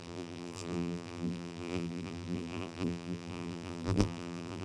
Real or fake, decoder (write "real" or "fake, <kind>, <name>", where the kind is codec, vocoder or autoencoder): fake, vocoder, BigVGAN v2